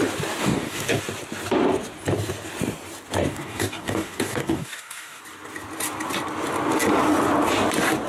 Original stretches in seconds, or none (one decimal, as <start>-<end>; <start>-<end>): 0.0-0.4; 1.0-3.2; 5.2-8.1